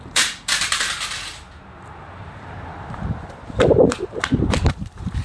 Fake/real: fake